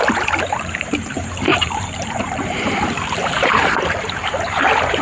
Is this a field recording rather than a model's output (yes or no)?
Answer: no